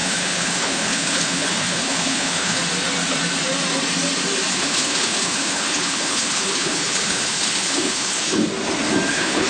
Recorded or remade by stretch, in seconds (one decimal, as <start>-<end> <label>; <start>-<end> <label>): 0.0-2.6 remade; 2.6-4.5 recorded; 4.5-8.5 remade; 8.5-9.1 recorded; 9.1-9.5 remade